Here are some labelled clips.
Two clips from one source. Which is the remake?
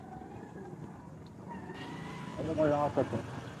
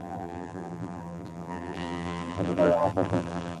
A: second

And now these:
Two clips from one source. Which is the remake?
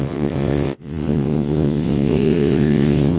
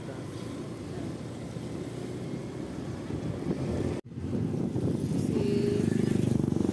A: first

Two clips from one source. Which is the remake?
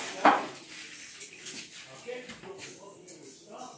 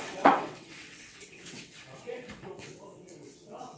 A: second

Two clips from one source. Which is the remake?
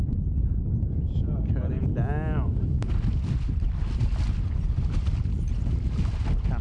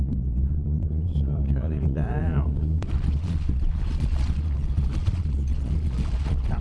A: second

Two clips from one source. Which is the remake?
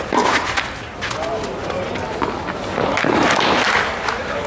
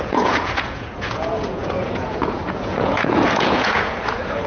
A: second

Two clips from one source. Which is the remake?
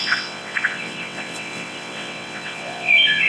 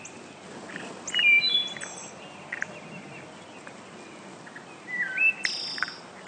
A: first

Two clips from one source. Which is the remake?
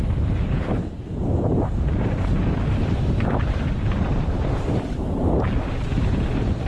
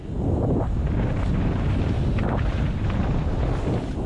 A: first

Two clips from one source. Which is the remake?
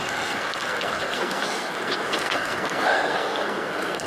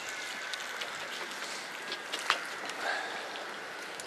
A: first